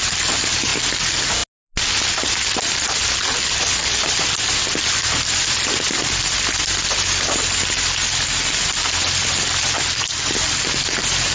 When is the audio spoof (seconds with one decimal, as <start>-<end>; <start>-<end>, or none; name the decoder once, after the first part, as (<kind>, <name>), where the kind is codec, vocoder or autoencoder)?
none